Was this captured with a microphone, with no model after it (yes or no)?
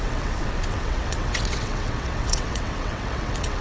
no